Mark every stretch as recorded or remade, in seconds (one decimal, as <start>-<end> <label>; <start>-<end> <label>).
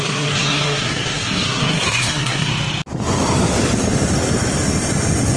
0.0-2.5 remade; 2.5-5.4 recorded